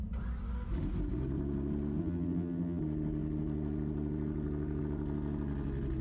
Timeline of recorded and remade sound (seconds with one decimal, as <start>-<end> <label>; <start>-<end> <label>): 0.0-2.0 recorded; 2.0-2.8 remade; 2.8-6.0 recorded

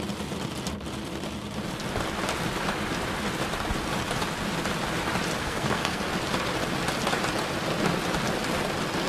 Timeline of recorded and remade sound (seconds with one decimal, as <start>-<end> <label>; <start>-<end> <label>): 0.0-5.4 recorded; 5.4-6.1 remade; 6.1-9.1 recorded